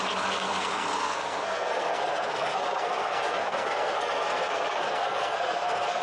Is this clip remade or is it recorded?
remade